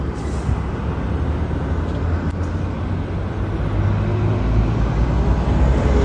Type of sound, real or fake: real